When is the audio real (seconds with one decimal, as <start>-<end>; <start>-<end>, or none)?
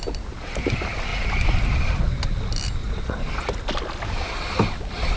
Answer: 0.0-2.8; 3.5-5.2